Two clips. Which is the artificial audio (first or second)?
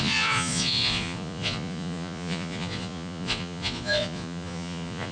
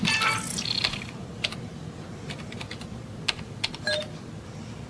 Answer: first